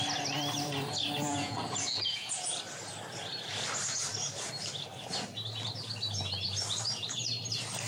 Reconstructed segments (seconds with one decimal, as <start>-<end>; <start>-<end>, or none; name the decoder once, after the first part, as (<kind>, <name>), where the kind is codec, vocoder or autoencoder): 1.3-2.6 (vocoder, Vocos)

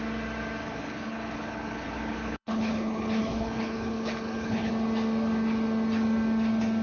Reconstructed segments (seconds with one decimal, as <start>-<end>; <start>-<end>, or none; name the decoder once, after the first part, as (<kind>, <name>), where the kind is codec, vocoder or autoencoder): 0.6-4.7 (codec, HILCodec)